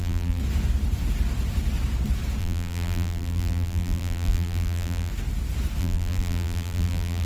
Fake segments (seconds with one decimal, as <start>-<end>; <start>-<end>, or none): 0.0-0.4; 2.4-5.1; 5.8-7.2